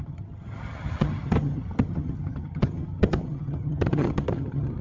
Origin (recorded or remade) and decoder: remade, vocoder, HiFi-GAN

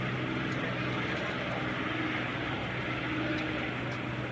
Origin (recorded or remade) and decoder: recorded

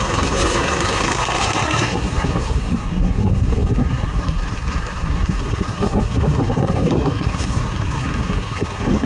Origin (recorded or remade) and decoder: remade, codec, SNAC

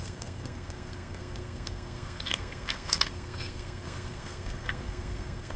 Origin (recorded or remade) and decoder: remade, codec, SNAC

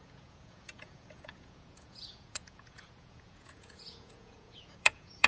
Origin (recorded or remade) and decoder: remade, vocoder, Vocos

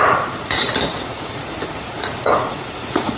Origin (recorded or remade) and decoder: remade, vocoder, Vocos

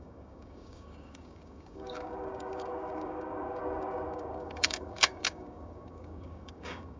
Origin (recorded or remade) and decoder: remade, codec, DAC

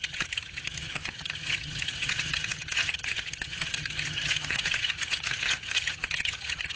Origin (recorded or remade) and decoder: remade, vocoder, HiFi-GAN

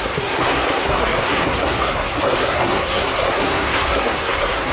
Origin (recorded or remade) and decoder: remade, codec, SNAC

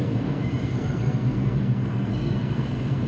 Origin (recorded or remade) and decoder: remade, codec, SNAC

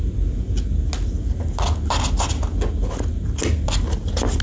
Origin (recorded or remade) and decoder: recorded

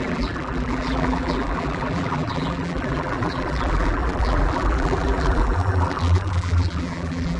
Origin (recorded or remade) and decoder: remade, vocoder, BigVGAN v2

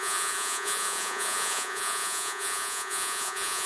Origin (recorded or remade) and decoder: remade, vocoder, Vocos